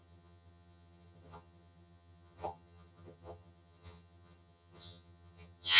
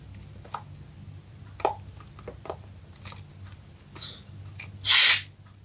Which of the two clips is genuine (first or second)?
second